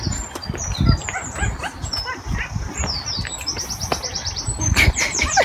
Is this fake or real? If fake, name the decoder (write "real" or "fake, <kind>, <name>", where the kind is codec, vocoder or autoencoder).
real